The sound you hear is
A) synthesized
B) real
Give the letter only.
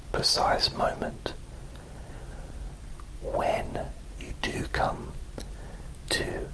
B